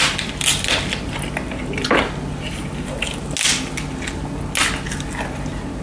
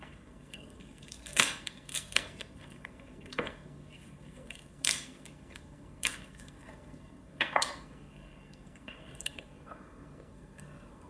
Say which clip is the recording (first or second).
first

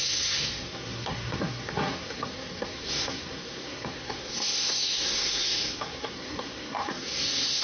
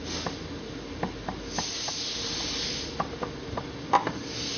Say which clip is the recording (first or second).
second